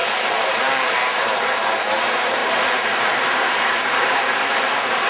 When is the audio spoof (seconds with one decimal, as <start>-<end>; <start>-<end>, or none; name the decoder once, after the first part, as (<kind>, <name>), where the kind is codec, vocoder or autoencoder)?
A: 0.0-5.1 (vocoder, BigVGAN v2)